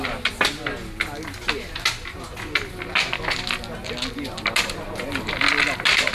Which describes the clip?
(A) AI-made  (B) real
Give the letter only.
B